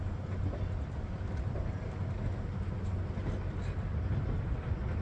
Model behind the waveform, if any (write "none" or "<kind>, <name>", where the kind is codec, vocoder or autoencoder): none